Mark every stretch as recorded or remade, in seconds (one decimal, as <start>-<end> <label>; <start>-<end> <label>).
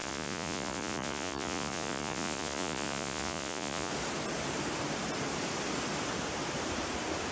0.0-3.9 remade; 3.9-7.3 recorded